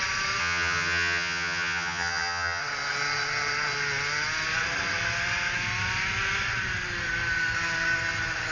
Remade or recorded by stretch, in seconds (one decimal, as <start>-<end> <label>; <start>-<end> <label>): 0.0-0.4 recorded; 0.4-2.6 remade; 2.6-8.5 recorded